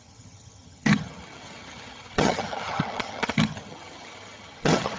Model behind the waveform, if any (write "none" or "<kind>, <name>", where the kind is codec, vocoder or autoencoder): vocoder, HiFi-GAN